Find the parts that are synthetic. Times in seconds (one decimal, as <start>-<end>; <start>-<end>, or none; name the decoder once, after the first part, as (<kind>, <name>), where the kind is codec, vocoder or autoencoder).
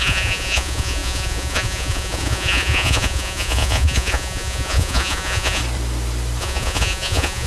0.0-5.6 (vocoder, Vocos); 6.4-7.5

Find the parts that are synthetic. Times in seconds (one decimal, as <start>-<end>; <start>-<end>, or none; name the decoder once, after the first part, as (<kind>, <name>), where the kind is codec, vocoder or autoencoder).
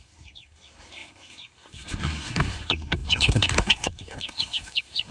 0.0-5.1 (codec, SNAC)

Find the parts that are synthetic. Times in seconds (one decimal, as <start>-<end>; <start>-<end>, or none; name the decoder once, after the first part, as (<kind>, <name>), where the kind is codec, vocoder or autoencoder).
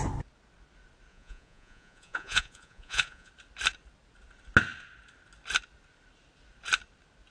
1.1-3.3 (vocoder, Vocos)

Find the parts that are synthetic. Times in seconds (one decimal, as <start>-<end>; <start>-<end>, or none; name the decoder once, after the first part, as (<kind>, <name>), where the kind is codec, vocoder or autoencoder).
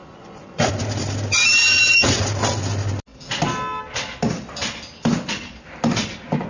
0.0-0.7 (vocoder, Vocos)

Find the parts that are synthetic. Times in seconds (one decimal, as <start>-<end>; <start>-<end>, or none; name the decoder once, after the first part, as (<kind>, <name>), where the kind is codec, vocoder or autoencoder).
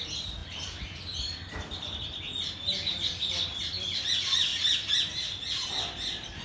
0.0-0.4 (vocoder, BigVGAN v2); 3.6-4.5; 5.5-6.4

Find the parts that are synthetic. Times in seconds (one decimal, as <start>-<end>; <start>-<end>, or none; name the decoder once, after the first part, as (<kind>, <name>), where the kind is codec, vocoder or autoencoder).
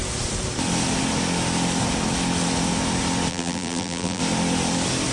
3.3-4.2 (vocoder, BigVGAN v2)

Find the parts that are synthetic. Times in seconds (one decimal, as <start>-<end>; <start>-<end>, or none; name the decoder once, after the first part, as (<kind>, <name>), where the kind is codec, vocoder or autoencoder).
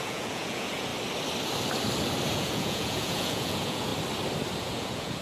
0.0-0.9 (vocoder, Vocos); 2.3-3.9; 4.6-5.2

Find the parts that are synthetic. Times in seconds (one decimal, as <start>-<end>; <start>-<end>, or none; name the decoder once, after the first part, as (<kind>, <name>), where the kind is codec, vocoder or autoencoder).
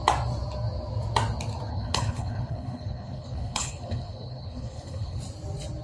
1.7-5.2 (codec, HILCodec)